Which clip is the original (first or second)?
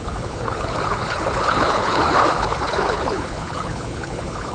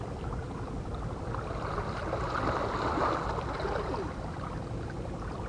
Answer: second